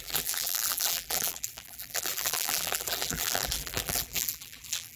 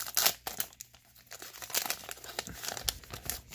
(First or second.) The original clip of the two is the second